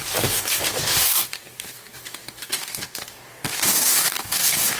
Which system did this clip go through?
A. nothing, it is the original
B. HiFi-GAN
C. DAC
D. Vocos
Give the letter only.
C